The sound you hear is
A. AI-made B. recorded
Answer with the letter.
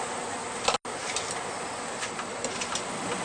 B